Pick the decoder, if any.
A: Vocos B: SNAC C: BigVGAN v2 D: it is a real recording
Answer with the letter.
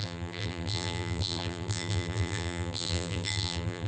C